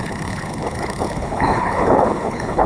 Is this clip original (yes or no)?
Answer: no